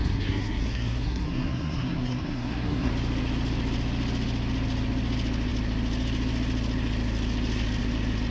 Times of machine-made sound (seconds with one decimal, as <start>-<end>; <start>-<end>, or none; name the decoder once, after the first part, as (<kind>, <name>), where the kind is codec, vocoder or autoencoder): 0.0-2.9 (codec, SNAC)